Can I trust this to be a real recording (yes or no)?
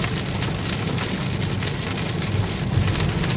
yes